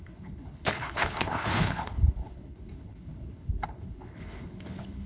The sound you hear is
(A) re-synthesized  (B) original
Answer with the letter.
A